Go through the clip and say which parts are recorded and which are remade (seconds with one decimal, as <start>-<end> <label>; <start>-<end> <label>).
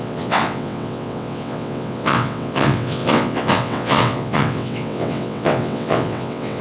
0.0-6.6 remade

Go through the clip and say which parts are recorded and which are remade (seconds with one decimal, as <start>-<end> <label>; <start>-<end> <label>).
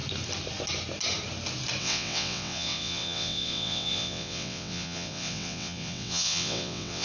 0.0-1.8 recorded; 1.8-7.0 remade